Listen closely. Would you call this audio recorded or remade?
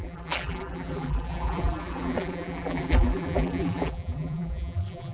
remade